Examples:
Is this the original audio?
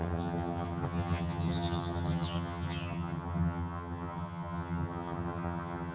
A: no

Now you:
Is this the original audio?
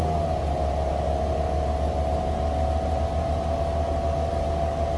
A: yes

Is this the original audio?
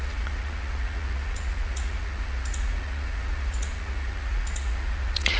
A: no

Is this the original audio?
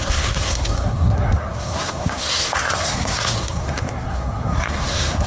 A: no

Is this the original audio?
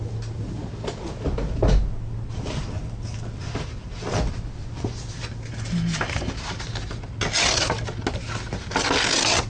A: yes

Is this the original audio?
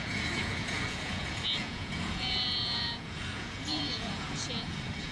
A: no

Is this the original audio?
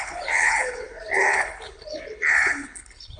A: no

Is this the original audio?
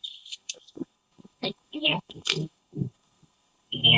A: no